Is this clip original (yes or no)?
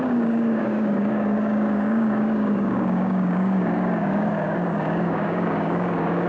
no